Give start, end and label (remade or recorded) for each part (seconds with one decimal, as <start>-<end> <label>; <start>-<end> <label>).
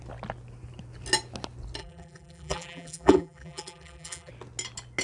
0.0-1.8 recorded; 1.8-4.3 remade; 4.3-5.0 recorded